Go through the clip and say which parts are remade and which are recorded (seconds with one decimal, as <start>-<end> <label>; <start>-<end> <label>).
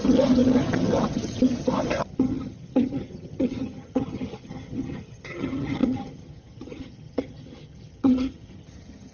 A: 0.0-9.1 remade